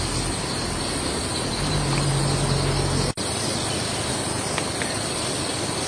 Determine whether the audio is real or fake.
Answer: real